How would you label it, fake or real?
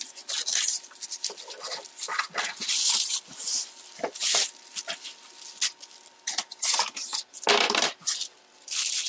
real